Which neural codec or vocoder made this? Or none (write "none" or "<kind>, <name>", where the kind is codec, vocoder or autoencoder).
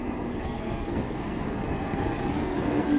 codec, SNAC